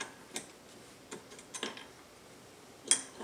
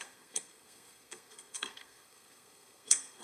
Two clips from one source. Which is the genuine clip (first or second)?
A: first